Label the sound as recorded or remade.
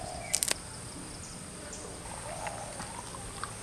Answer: recorded